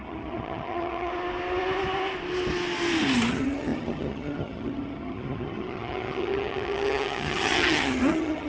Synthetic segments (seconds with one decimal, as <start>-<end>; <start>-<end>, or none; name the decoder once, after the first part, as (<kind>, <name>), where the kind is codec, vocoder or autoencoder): 0.0-1.1 (vocoder, HiFi-GAN); 3.3-8.5